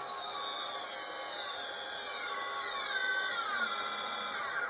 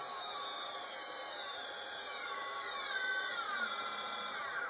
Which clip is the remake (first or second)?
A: second